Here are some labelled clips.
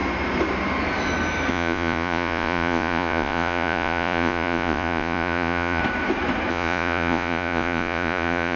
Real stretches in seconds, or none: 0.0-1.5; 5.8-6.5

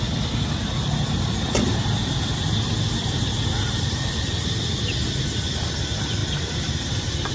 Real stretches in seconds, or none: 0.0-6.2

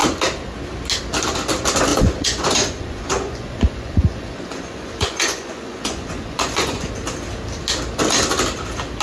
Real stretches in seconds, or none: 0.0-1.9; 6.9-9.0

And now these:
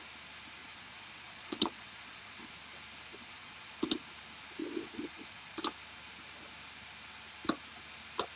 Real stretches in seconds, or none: 0.0-0.6; 2.5-3.1; 3.7-4.6; 5.6-8.4

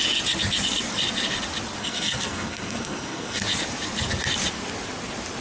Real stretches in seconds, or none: 0.0-1.8; 3.4-5.4

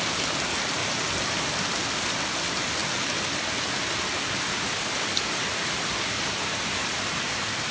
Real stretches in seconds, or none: 0.0-7.7

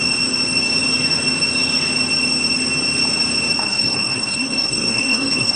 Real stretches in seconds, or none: 0.0-3.6

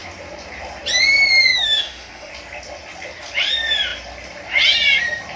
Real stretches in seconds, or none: 0.0-1.5; 2.3-5.4